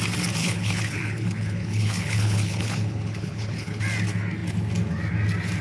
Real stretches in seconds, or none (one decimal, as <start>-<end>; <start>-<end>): 0.0-0.4; 3.8-5.6